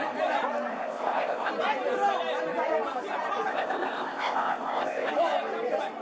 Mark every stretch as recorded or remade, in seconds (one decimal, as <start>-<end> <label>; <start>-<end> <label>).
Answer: 0.0-0.7 recorded; 0.7-1.5 remade; 1.5-3.5 recorded; 3.5-5.1 remade; 5.1-6.0 recorded